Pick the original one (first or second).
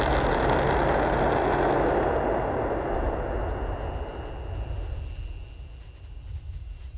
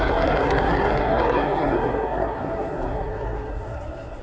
first